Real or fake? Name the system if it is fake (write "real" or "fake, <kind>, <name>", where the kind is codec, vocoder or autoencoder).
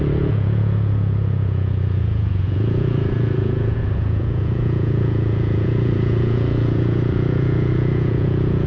fake, vocoder, Vocos